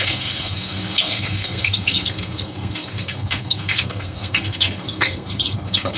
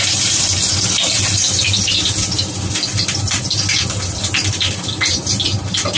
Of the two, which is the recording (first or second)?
second